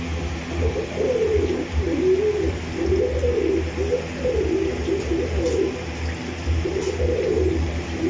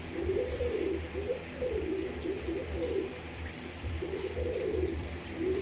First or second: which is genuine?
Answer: first